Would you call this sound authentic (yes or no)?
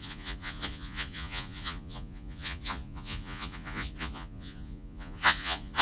no